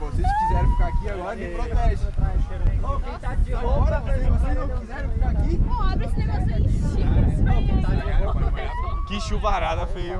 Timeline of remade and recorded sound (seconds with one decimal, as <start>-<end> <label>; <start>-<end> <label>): 0.0-9.5 recorded; 9.5-10.2 remade

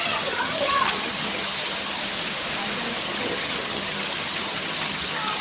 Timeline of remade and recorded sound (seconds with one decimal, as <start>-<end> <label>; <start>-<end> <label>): 0.0-2.0 remade; 2.0-3.0 recorded; 3.0-5.4 remade